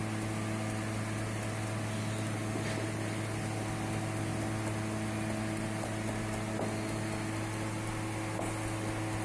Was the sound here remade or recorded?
recorded